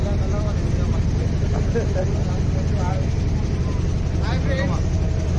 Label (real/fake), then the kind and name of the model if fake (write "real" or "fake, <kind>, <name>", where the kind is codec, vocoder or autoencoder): real